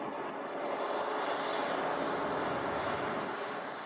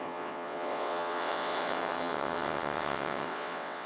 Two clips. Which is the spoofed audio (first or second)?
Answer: second